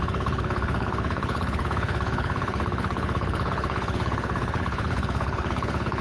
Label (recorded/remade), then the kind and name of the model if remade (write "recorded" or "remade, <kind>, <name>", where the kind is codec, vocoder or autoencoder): remade, codec, HILCodec